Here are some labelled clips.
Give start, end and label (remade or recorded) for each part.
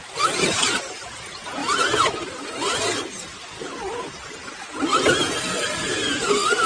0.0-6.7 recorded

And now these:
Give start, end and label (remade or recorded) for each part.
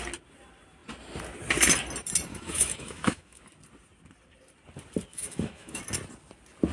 0.0-2.3 recorded; 2.3-3.4 remade; 3.4-5.1 recorded; 5.1-5.8 remade; 5.8-6.7 recorded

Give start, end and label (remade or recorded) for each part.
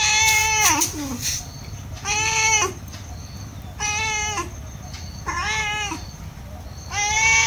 0.0-7.5 recorded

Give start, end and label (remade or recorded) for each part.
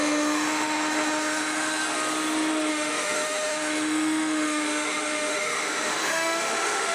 0.0-1.9 remade; 1.9-2.7 recorded; 2.7-6.9 remade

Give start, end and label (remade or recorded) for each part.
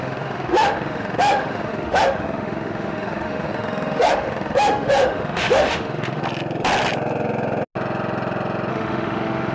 0.0-6.2 remade; 6.2-8.7 recorded; 8.7-9.5 remade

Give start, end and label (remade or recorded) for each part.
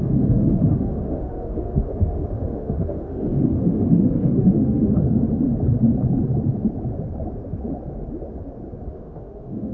0.0-5.2 remade; 5.2-8.9 recorded; 8.9-9.7 remade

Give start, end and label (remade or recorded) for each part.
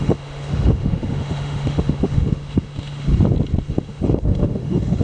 0.0-3.1 remade; 3.1-3.7 recorded; 3.7-5.0 remade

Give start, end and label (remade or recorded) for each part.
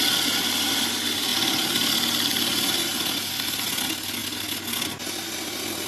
0.0-5.9 recorded